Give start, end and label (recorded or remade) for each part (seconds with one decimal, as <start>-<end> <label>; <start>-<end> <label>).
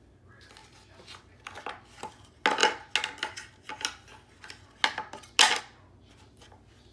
0.0-6.9 recorded